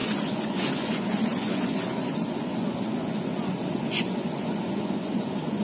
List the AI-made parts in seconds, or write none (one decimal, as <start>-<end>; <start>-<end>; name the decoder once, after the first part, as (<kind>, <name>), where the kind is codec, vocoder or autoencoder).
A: 0.0-5.6 (vocoder, Vocos)